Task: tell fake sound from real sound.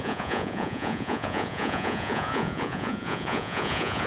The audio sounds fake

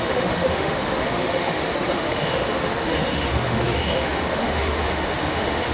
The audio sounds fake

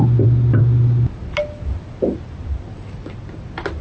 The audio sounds real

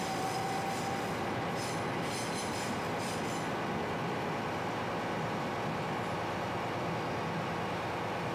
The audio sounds real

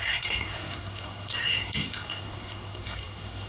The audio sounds fake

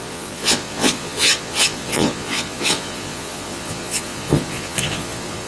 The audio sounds fake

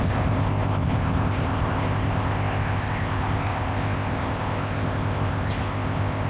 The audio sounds fake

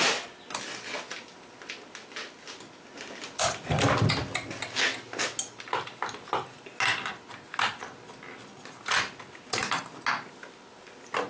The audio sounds real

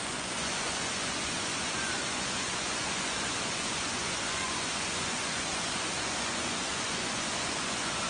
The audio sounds fake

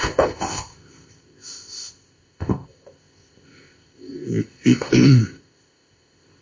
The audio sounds fake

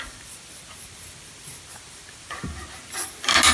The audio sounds real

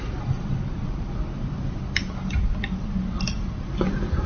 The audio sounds real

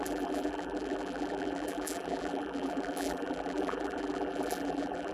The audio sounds fake